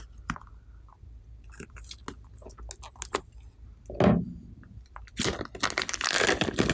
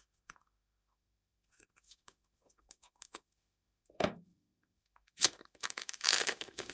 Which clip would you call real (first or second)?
first